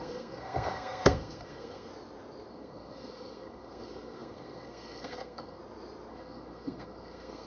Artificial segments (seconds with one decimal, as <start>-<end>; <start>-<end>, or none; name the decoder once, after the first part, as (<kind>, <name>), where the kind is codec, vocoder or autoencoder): 0.0-1.9 (codec, SNAC); 2.5-5.6; 6.1-7.5